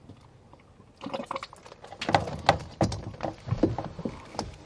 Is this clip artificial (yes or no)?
no